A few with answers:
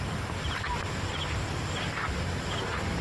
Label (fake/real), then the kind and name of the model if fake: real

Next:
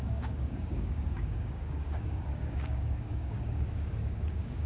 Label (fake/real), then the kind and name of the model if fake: fake, codec, DAC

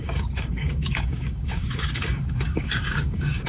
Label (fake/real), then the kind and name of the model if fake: fake, codec, DAC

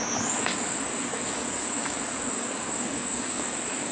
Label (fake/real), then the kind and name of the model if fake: fake, codec, DAC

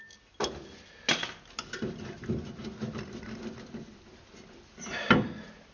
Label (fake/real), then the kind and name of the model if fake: real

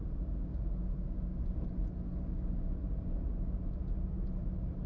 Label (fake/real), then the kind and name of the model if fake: real